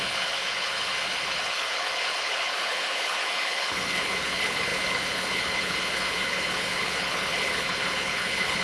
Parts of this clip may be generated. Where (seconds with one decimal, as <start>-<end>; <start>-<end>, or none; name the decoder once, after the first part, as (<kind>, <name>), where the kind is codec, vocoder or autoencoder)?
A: 0.0-8.6 (codec, HILCodec)